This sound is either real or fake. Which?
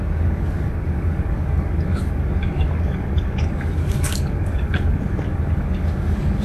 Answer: fake